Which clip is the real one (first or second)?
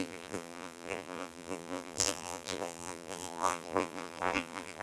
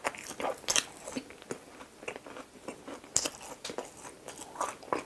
second